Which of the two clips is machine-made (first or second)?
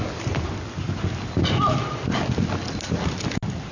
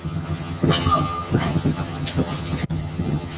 second